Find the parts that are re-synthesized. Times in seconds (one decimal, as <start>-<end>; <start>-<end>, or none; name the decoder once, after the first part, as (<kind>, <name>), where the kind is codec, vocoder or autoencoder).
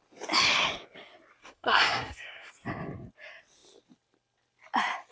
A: 1.4-2.5 (codec, SNAC)